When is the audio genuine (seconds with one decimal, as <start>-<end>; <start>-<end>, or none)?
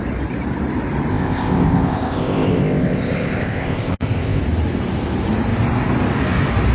0.0-1.1; 4.4-6.7